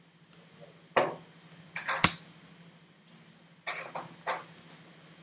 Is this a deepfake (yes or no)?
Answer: no